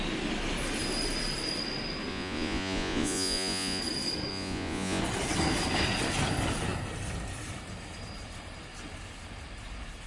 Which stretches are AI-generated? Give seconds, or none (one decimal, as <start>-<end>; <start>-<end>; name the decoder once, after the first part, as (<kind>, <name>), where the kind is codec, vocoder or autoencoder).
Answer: 2.1-3.8 (vocoder, Vocos); 4.3-5.0